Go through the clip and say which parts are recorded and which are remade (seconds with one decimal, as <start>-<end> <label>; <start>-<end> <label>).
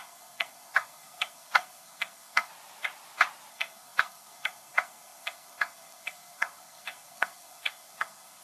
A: 0.0-2.5 remade; 2.5-3.5 recorded; 3.5-8.4 remade